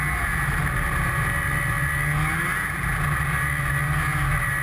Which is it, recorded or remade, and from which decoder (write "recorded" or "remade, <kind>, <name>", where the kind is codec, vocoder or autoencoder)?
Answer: recorded